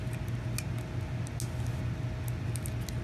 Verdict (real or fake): real